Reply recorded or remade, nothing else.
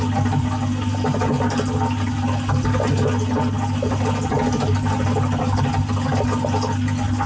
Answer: recorded